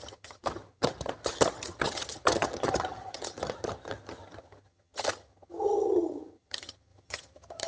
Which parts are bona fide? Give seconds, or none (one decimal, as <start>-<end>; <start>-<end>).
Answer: none

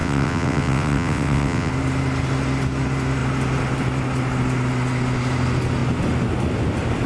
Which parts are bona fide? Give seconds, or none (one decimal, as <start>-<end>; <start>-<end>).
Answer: 1.7-7.1

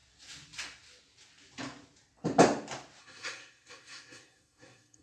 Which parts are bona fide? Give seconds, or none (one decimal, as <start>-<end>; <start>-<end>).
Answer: 0.0-3.0

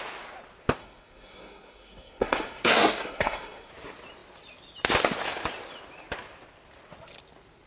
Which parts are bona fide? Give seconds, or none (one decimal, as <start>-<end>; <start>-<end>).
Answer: 0.0-0.8; 3.7-7.7

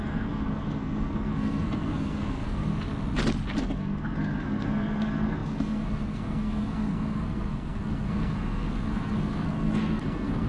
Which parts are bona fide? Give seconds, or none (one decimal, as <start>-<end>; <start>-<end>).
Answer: 2.7-3.6

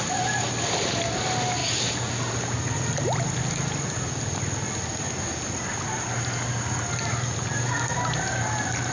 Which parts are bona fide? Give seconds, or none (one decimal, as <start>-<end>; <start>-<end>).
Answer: 0.0-8.9